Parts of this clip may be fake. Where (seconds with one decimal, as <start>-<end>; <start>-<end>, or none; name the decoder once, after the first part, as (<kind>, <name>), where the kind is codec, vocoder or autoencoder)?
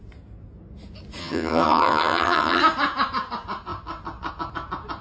1.2-2.6 (vocoder, HiFi-GAN)